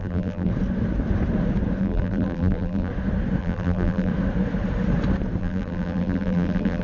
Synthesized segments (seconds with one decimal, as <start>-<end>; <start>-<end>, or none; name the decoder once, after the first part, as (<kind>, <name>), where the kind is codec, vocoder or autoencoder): 0.0-0.5 (vocoder, BigVGAN v2); 1.8-2.9; 3.4-4.1; 5.4-6.8

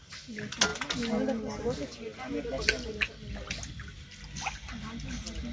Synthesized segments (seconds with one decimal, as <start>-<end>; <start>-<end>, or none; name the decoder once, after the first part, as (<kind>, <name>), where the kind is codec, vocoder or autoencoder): none

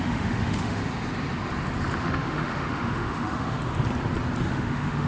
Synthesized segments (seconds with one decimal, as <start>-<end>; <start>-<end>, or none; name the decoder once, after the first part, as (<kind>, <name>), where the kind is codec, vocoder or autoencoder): 0.0-0.8 (autoencoder, DAC-VAE); 2.0-3.6; 4.5-5.1

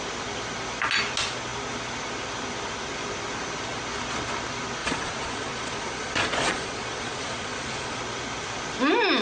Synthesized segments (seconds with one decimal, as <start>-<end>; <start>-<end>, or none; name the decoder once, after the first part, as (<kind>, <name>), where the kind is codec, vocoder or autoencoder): 4.8-8.0 (vocoder, Vocos)

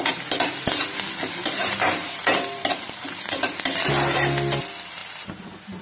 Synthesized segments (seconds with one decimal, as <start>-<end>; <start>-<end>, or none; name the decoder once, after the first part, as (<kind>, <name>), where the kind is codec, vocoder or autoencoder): 1.4-3.6 (vocoder, BigVGAN v2)